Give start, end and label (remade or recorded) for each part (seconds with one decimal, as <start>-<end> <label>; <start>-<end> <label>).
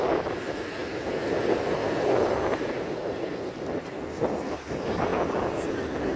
0.0-6.2 recorded